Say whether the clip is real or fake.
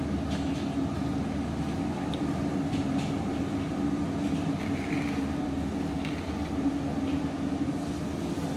real